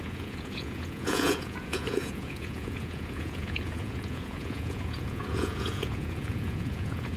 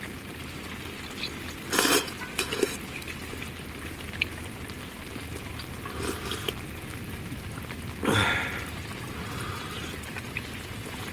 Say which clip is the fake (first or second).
first